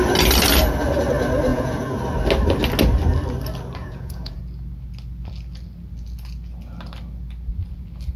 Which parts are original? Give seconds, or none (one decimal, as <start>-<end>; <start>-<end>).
0.0-1.5; 2.0-3.8; 4.4-8.2